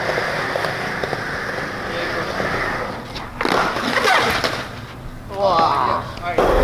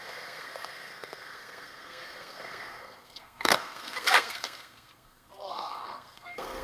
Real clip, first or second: first